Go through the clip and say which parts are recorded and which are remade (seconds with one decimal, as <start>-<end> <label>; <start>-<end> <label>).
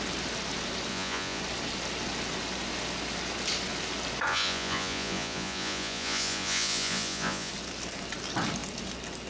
0.0-0.9 recorded; 0.9-1.4 remade; 1.4-4.3 recorded; 4.3-7.5 remade; 7.5-9.3 recorded